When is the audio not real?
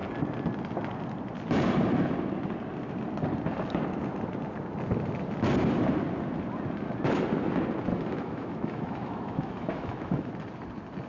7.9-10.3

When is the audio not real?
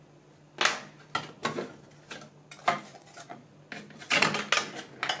2.9-3.5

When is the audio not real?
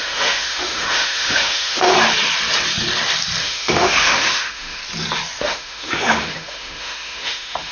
0.0-1.9; 3.4-4.8; 5.4-7.7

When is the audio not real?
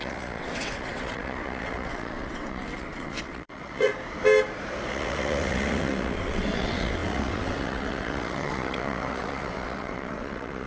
0.0-3.9; 4.9-10.7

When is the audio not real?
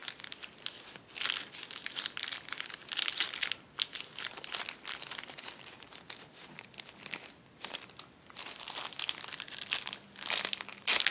none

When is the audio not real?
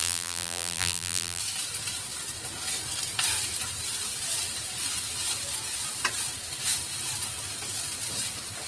0.0-1.4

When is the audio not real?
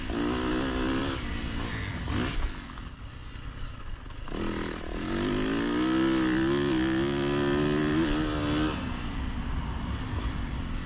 none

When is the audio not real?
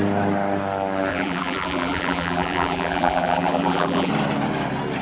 1.1-4.1